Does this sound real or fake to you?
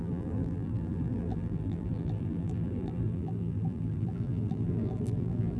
fake